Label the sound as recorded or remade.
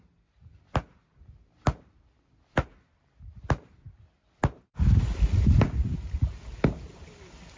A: recorded